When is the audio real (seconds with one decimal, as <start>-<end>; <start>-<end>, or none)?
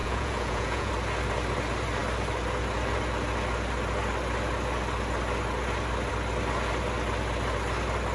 0.9-8.1